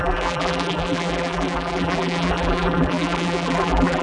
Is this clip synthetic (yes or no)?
yes